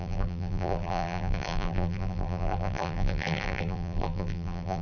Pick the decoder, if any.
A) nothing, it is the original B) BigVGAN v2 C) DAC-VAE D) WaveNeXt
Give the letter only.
B